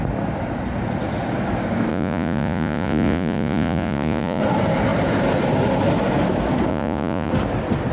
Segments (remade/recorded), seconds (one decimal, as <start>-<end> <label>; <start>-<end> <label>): 0.0-1.9 recorded; 1.9-4.4 remade; 4.4-6.7 recorded; 6.7-7.3 remade; 7.3-7.9 recorded